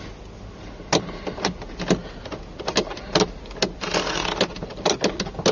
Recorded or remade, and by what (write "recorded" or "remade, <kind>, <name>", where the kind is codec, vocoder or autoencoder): recorded